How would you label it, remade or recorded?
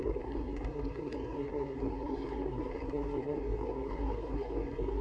remade